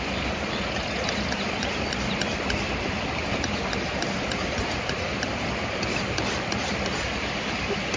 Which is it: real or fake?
real